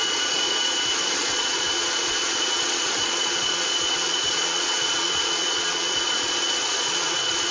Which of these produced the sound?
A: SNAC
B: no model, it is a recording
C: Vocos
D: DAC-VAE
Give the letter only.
C